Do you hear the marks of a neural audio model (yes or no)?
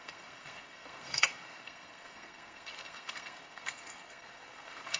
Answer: yes